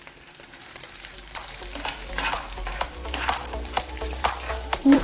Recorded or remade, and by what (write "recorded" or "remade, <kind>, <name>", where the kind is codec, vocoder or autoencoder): remade, vocoder, BigVGAN v2